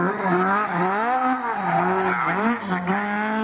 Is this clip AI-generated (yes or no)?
no